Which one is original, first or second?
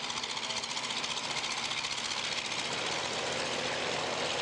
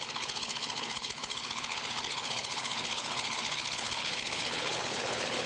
first